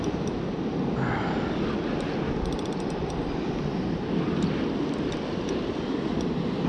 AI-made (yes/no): no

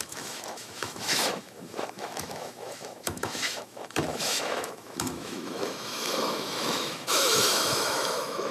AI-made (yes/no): yes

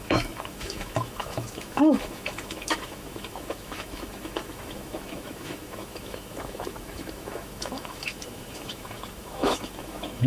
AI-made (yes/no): yes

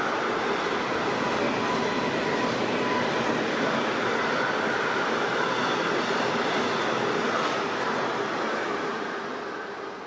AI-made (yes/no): no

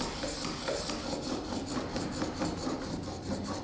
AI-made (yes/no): no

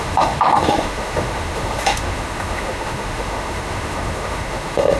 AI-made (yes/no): yes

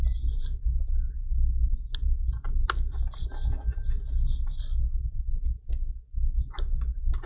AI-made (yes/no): no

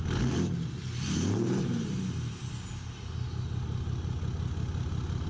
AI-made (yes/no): no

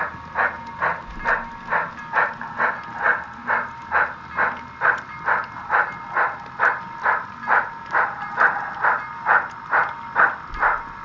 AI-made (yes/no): no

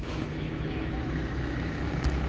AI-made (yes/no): yes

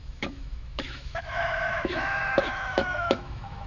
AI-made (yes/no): yes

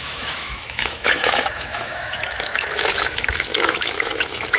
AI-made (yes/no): yes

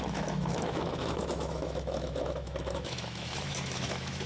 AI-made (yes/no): yes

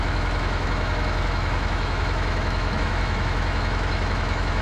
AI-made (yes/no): yes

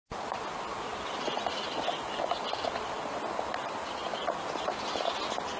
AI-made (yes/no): no